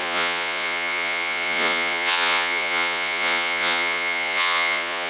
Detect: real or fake fake